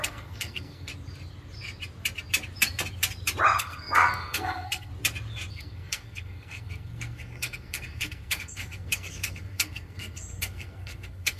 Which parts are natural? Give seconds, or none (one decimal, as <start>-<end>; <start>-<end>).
0.9-3.6; 4.9-5.5